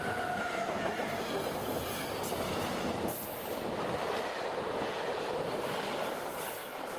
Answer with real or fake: real